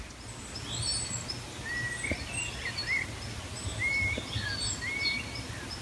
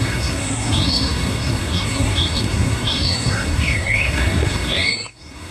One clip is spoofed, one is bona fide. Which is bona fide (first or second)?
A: first